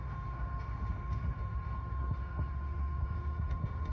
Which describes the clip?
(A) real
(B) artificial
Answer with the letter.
B